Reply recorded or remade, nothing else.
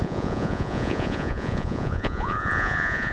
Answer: remade